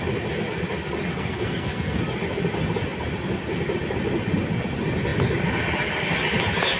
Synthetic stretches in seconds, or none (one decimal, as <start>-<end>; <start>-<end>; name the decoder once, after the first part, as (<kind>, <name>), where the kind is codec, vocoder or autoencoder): 1.1-2.0 (codec, SNAC)